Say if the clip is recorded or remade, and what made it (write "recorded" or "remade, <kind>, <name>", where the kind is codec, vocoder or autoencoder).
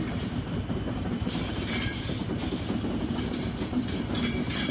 remade, vocoder, BigVGAN v2